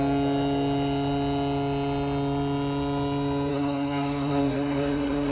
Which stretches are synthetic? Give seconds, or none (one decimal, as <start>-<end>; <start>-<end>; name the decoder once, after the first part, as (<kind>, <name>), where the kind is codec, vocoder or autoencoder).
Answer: 3.5-5.3 (codec, SNAC)